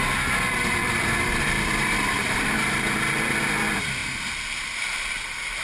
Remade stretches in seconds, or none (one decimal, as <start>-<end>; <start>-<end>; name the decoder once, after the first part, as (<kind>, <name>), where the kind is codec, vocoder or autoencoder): 0.8-2.8 (vocoder, BigVGAN v2)